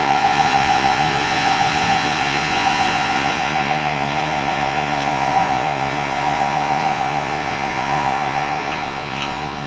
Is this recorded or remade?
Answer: remade